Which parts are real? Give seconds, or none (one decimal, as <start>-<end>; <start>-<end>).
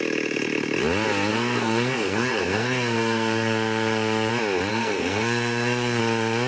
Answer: 0.0-1.3; 4.3-4.7; 6.0-6.5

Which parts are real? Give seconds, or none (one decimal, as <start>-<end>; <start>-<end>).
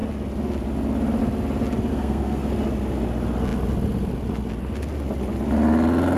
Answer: 0.0-1.9; 2.5-6.2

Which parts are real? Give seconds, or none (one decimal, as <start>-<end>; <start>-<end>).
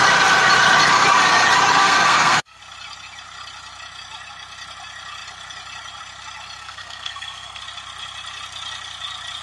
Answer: 0.0-1.8; 2.6-6.6; 7.6-9.4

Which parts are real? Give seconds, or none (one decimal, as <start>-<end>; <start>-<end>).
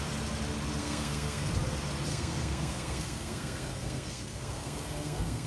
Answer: 0.0-0.8; 1.5-2.1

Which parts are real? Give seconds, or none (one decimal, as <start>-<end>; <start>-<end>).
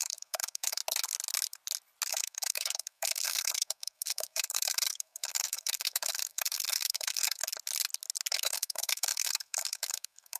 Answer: 0.8-2.1; 7.4-8.3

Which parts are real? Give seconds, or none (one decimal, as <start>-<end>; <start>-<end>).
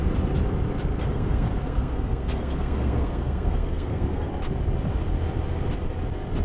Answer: 0.0-1.0; 4.3-6.4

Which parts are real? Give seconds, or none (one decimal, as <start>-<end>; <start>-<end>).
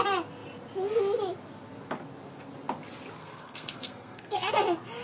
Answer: 0.0-3.2; 4.5-5.0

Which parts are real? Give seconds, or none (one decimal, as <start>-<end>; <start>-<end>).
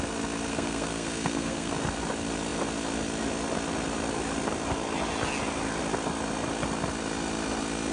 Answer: 0.0-0.5; 1.7-7.9